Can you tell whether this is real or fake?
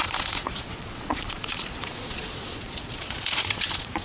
fake